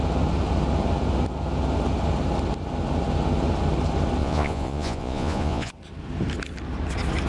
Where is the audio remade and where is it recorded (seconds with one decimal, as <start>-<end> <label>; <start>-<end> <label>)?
0.0-4.2 recorded; 4.2-5.7 remade; 5.7-7.3 recorded